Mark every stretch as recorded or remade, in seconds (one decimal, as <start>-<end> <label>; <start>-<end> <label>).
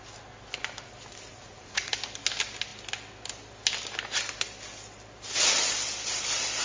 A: 0.0-1.3 recorded; 1.3-1.9 remade; 1.9-6.6 recorded